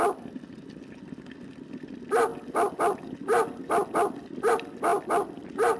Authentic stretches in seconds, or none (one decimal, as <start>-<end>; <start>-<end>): 0.0-5.8